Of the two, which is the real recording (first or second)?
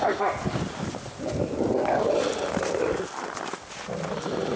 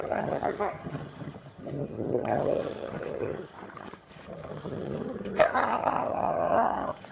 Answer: first